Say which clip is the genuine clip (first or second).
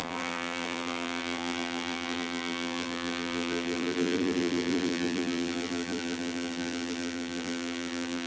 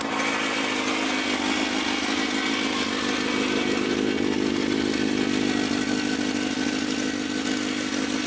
second